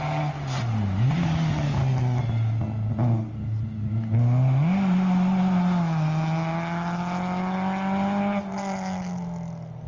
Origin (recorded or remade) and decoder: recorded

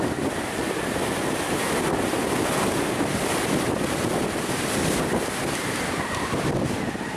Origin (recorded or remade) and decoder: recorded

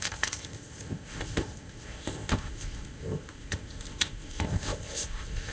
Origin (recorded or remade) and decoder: remade, codec, ZipCodec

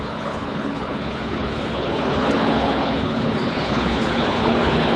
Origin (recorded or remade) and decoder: remade, codec, HILCodec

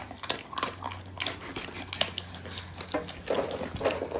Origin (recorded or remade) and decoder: recorded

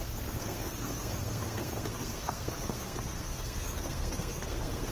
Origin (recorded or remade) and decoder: remade, codec, SNAC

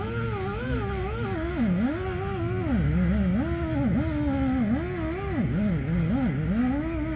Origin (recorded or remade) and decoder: recorded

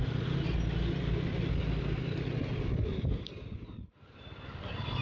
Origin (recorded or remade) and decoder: recorded